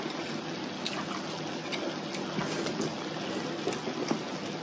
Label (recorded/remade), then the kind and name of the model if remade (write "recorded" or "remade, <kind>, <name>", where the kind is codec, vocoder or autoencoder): recorded